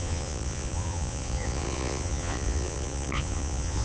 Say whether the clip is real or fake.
fake